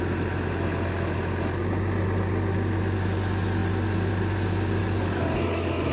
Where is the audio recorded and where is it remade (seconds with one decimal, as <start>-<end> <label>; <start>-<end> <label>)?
0.0-4.8 recorded; 4.8-5.9 remade